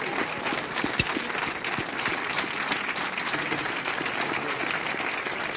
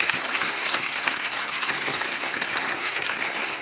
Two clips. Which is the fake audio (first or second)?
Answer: second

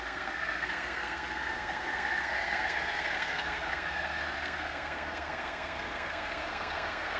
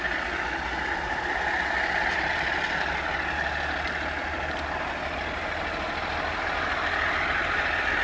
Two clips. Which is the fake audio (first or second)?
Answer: first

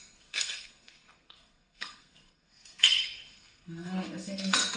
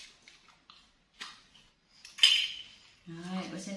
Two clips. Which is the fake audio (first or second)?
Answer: first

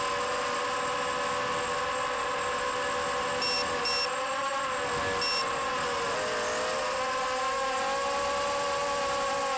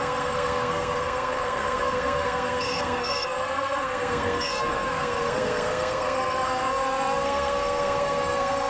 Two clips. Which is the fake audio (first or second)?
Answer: second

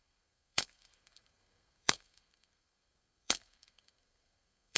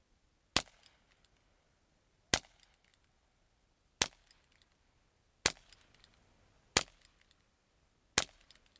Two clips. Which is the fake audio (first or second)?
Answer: first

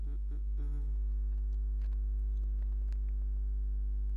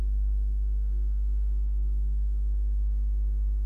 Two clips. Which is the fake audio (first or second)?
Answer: second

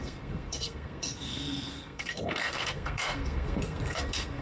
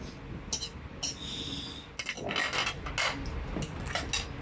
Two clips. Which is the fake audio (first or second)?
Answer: first